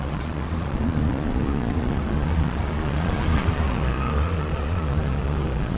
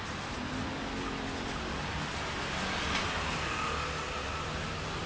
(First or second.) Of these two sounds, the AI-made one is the first